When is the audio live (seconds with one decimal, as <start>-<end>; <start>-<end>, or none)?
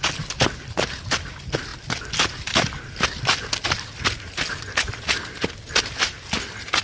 0.0-6.8